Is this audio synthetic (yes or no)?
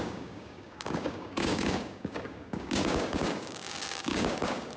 yes